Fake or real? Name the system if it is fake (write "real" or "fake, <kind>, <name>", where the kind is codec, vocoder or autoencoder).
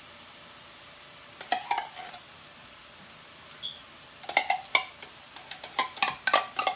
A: real